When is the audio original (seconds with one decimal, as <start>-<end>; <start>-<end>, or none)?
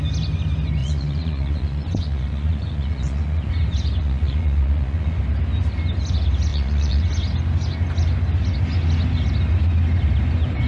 0.0-0.8; 3.5-4.0; 5.2-6.5; 7.0-10.7